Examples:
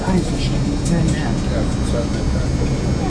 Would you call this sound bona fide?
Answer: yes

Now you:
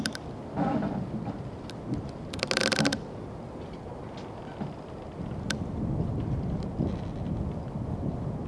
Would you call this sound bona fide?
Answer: yes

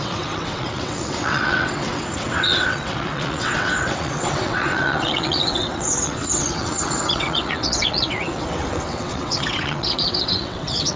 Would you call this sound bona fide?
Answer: no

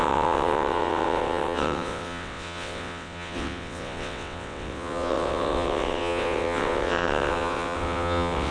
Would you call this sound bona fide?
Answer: no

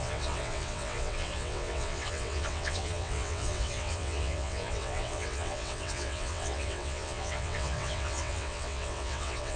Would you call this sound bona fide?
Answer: no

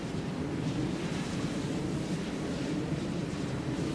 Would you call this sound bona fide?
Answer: yes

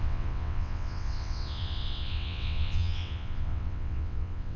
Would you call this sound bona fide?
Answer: no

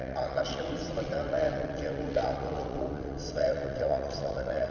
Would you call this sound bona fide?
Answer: no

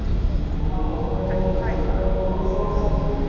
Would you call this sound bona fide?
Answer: yes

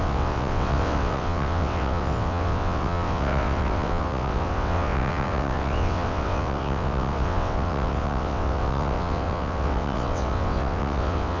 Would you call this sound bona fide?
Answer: no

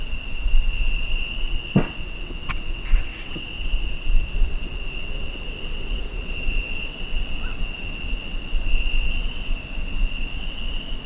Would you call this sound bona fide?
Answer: no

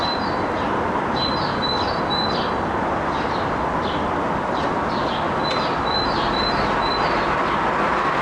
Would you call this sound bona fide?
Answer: yes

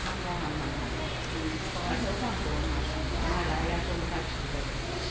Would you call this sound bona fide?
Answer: yes